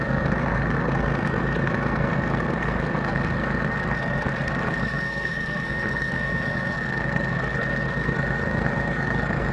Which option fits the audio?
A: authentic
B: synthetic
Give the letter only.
B